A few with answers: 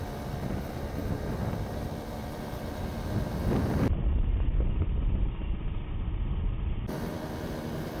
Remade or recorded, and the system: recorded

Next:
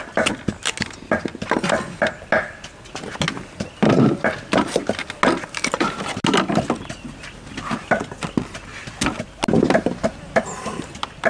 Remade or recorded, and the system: recorded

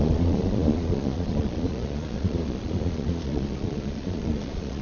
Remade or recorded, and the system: remade, vocoder, Vocos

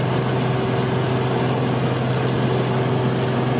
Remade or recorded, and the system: recorded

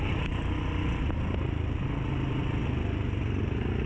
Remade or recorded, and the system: recorded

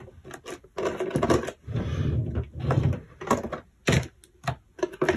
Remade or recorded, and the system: recorded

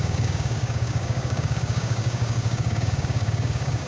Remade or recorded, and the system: remade, codec, DAC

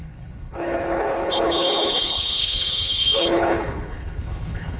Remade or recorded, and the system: remade, codec, HILCodec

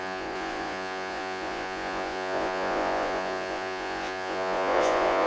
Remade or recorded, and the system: remade, vocoder, Vocos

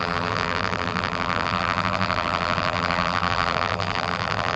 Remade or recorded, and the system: remade, vocoder, BigVGAN v2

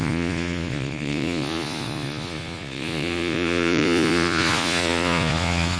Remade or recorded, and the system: remade, vocoder, Vocos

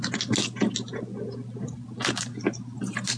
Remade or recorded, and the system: recorded